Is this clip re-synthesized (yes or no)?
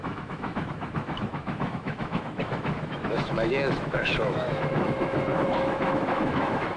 yes